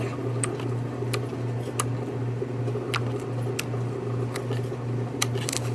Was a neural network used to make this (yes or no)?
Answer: no